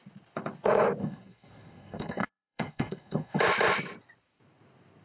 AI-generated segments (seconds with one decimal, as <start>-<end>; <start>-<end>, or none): 1.0-3.4